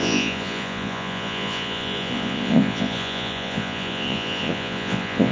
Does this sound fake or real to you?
fake